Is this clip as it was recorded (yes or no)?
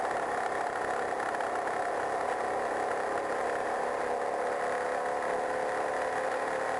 yes